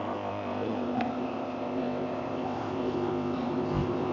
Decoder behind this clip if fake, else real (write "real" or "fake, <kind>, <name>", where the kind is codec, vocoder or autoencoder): fake, codec, ZipCodec